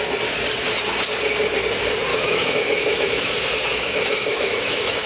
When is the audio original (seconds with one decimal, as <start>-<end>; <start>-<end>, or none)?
0.0-2.1; 3.3-3.7